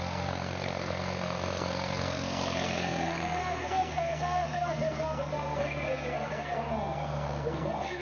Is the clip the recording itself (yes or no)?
no